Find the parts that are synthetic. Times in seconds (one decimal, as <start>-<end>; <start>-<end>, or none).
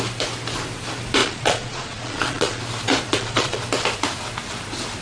1.2-2.6; 3.1-3.6